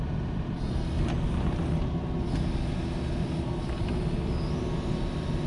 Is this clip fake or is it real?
real